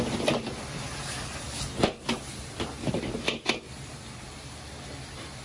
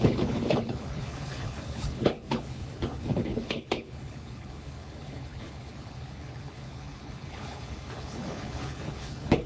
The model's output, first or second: second